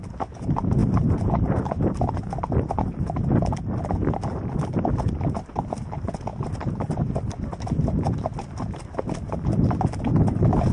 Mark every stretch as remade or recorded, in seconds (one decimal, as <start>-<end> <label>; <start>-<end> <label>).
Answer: 0.0-0.8 recorded; 0.8-2.2 remade; 2.2-10.7 recorded